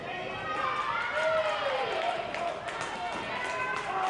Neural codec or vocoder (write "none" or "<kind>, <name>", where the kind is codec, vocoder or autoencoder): none